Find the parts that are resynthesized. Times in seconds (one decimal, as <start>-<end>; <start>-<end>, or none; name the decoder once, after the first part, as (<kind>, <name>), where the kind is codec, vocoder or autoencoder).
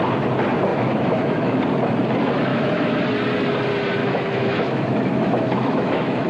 0.7-1.6 (autoencoder, DAC-VAE); 2.5-3.0; 4.0-6.3